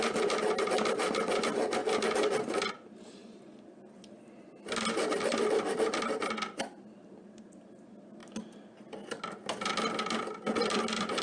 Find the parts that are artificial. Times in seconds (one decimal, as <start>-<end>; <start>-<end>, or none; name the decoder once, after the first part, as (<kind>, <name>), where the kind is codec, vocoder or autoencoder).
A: 0.0-1.8 (vocoder, BigVGAN v2); 2.7-8.2; 10.6-11.2